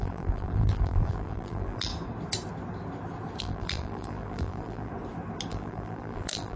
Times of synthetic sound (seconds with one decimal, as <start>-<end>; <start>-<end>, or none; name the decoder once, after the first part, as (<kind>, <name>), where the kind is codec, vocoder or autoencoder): 0.0-1.9 (vocoder, BigVGAN v2); 3.4-4.9; 5.5-6.6